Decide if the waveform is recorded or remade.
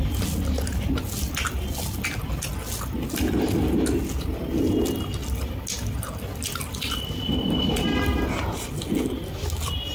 recorded